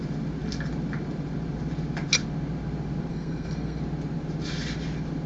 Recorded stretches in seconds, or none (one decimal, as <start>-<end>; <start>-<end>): 0.0-3.1; 3.8-5.3